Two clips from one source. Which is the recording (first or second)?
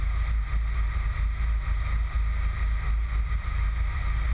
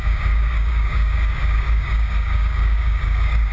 first